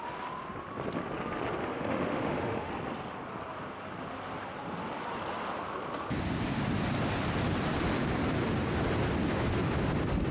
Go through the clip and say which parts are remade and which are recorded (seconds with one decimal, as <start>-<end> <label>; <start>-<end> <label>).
0.0-1.6 recorded; 1.6-2.7 remade; 2.7-10.3 recorded